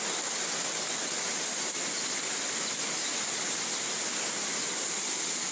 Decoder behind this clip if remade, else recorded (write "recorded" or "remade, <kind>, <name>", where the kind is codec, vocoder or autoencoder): recorded